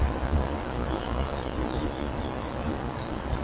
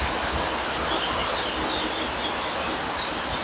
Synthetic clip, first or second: first